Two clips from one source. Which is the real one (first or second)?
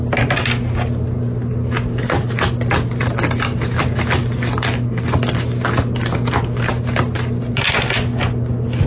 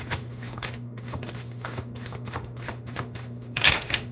first